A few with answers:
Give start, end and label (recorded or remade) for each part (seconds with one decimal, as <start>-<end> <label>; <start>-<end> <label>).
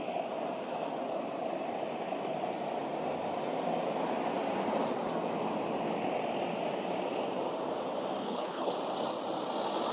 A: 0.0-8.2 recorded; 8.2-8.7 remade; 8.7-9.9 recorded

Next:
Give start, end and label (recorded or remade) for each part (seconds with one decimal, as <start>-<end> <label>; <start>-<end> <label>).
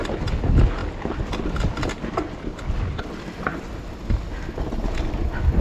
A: 0.0-5.6 recorded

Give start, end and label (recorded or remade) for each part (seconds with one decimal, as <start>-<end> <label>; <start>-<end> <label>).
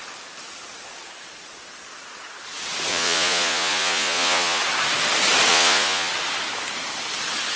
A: 0.0-2.9 recorded; 2.9-4.6 remade; 4.6-5.5 recorded; 5.5-6.1 remade; 6.1-7.6 recorded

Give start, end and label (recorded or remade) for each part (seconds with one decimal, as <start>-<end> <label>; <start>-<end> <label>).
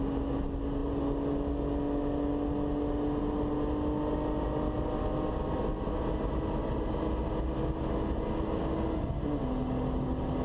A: 0.0-10.4 recorded